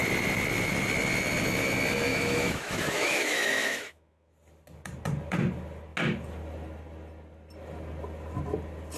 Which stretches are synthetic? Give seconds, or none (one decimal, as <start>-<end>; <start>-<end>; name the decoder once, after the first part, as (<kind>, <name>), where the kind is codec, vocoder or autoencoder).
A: 2.1-4.3 (autoencoder, DAC-VAE)